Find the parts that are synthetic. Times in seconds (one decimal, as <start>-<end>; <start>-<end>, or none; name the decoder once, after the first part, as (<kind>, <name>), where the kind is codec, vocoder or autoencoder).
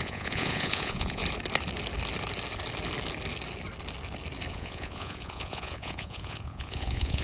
0.0-1.2 (vocoder, Vocos); 4.5-7.2